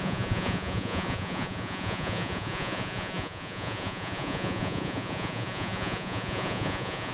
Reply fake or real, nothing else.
fake